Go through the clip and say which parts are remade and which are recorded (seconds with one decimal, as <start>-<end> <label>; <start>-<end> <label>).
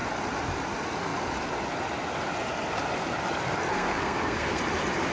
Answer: 0.0-3.7 recorded; 3.7-4.6 remade; 4.6-5.1 recorded